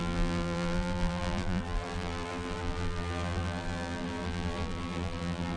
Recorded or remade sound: remade